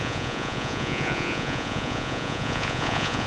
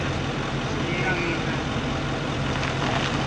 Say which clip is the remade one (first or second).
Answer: first